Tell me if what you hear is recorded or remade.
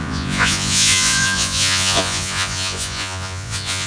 remade